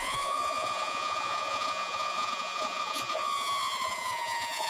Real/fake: fake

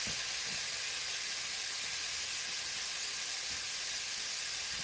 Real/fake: real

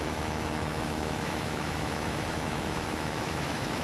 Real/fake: fake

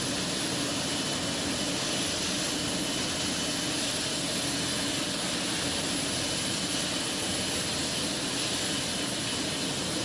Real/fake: real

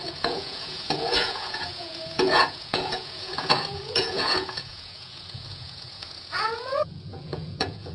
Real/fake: fake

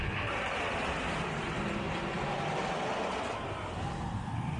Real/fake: real